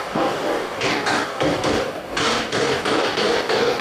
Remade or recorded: remade